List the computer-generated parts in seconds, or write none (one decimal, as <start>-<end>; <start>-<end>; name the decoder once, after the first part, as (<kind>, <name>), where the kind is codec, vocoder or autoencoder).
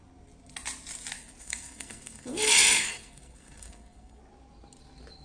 1.4-4.2 (codec, SNAC)